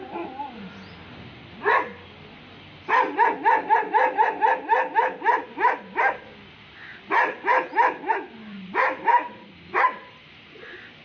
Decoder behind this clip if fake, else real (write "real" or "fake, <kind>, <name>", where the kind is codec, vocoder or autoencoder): real